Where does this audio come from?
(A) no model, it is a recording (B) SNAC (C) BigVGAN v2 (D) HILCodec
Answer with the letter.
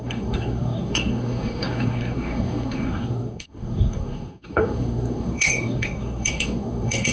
B